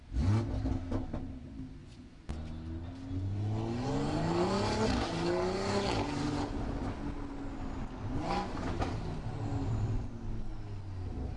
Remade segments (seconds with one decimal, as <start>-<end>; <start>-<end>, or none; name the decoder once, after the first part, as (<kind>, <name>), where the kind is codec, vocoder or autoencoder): 1.8-2.3 (vocoder, Vocos)